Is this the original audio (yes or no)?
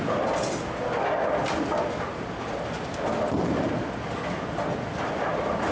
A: yes